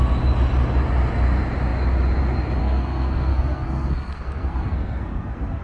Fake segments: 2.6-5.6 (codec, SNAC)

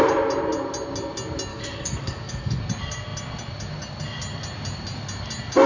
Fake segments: 1.5-2.6 (codec, DAC)

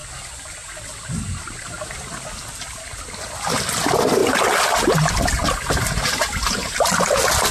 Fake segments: none

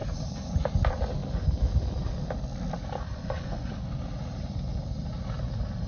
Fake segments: 3.1-3.7 (vocoder, Vocos)

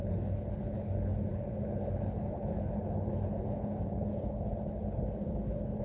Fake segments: 0.0-5.8 (codec, HILCodec)

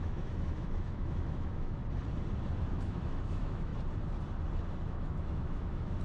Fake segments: 0.0-1.8 (autoencoder, DAC-VAE); 2.6-3.7; 4.8-6.0

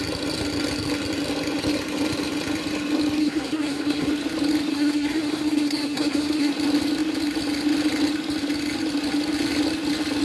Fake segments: 3.2-4.1 (codec, SNAC); 4.7-6.5

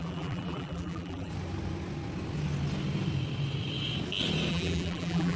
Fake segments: 0.0-1.3 (vocoder, BigVGAN v2); 4.5-5.4